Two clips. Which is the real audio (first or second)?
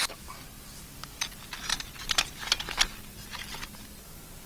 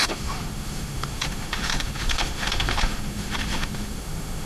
first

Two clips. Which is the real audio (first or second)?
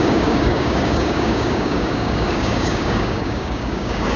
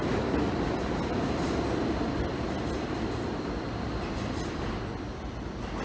second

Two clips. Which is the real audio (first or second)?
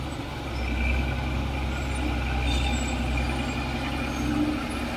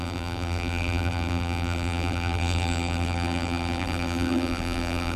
first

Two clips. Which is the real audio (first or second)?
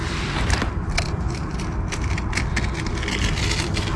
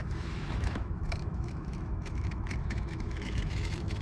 first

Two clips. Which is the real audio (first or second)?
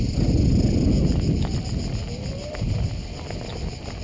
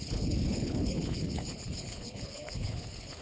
first